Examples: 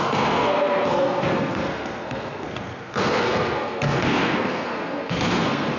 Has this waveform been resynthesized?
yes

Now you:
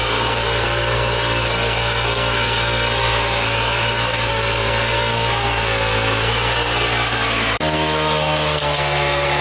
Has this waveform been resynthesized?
yes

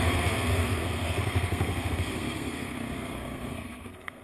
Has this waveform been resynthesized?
yes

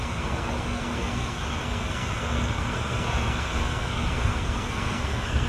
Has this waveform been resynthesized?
yes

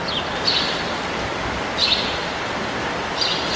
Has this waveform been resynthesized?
no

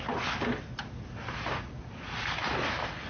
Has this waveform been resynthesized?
no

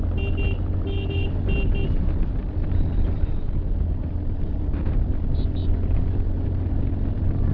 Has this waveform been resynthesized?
no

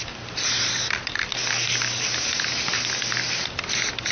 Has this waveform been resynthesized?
no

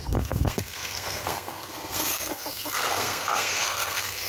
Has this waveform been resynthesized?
yes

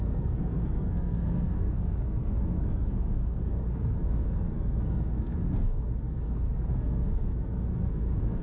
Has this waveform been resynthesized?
yes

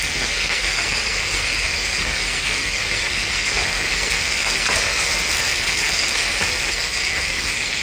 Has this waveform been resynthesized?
yes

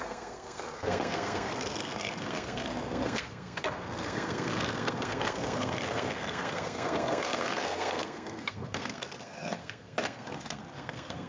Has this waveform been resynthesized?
yes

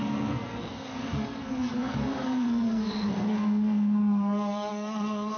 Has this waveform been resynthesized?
yes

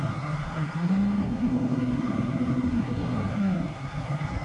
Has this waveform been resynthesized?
yes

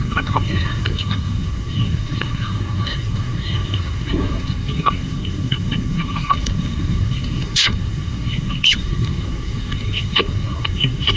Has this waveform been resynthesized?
yes